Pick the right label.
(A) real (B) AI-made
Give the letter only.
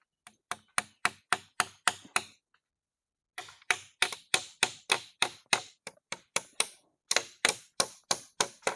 A